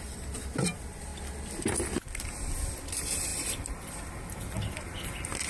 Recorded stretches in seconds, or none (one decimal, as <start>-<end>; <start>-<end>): 1.1-2.7